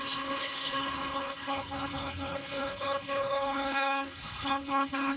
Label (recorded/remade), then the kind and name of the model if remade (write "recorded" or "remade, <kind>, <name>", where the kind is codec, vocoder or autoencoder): remade, codec, HILCodec